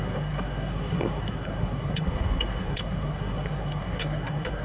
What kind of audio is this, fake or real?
fake